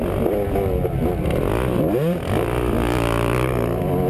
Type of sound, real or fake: real